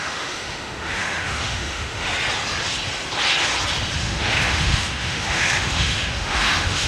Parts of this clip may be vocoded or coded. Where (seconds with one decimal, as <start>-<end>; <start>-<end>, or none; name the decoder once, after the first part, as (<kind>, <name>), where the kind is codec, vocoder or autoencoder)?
0.0-2.1 (autoencoder, DAC-VAE); 4.0-6.9